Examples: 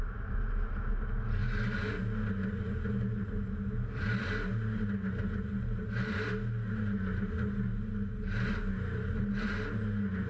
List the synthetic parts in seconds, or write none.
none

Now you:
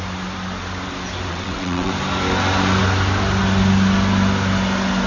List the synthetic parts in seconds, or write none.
1.3-1.9 (vocoder, WaveNeXt)

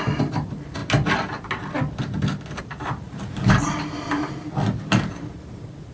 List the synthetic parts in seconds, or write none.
0.0-0.8 (vocoder, BigVGAN v2); 2.6-4.2; 5.0-5.9

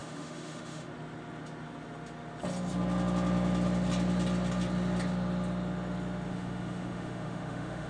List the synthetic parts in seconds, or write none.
0.0-0.9 (autoencoder, DAC-VAE); 6.3-7.9

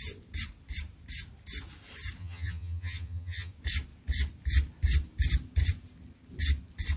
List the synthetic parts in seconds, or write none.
2.2-3.5 (vocoder, HiFi-GAN)